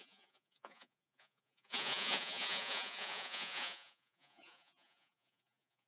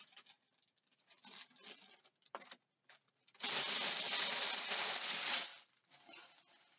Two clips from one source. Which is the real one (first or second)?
second